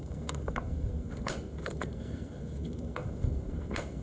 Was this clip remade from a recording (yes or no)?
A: yes